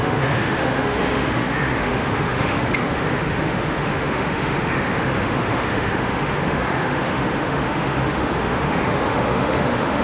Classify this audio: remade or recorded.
remade